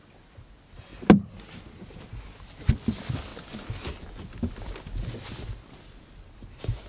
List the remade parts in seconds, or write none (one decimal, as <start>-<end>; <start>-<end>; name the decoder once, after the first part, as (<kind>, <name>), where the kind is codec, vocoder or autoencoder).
none